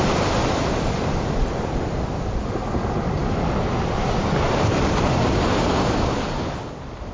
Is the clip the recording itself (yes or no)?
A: yes